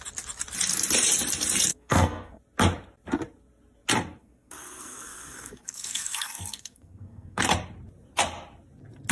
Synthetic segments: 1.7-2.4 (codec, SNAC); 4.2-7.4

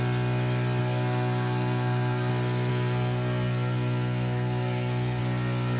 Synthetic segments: 0.8-2.3 (codec, SNAC); 2.7-5.2